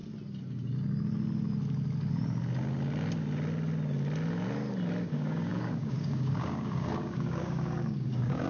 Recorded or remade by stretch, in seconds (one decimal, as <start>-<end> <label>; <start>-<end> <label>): 0.0-5.0 recorded; 5.0-8.5 remade